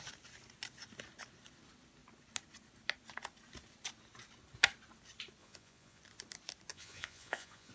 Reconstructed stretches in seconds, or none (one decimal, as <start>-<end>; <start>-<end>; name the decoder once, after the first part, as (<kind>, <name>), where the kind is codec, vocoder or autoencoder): 5.4-6.0 (vocoder, Vocos); 6.7-7.7